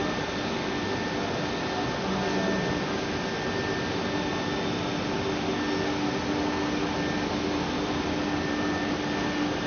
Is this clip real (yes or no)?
yes